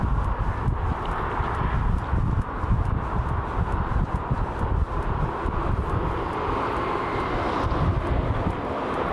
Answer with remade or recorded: recorded